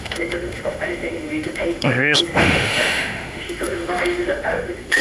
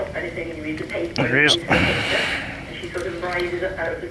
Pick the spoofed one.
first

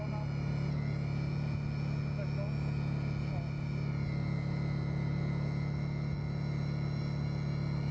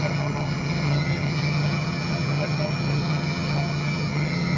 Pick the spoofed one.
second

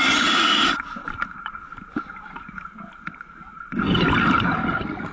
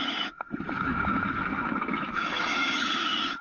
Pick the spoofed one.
second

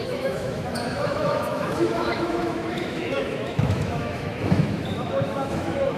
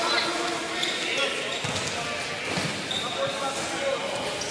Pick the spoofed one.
first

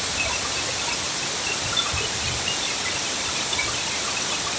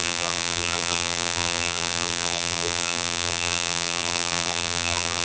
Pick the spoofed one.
second